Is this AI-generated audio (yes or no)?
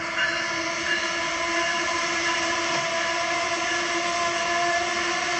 yes